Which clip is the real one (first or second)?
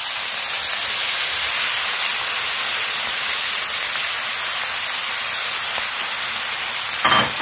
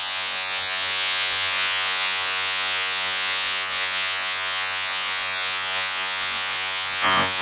first